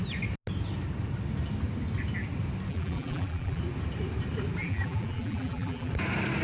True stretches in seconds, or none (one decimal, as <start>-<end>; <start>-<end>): 0.0-2.7; 3.6-4.6; 5.9-6.4